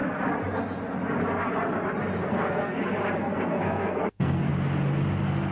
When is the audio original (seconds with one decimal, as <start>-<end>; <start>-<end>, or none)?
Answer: 0.0-2.2; 2.8-3.2; 4.5-5.5

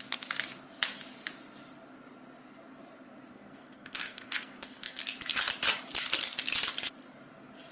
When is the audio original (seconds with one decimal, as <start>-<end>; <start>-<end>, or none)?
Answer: 0.0-3.3; 5.0-7.7

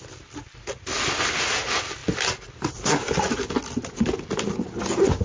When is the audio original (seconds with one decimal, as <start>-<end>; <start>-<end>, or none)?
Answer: 0.0-5.2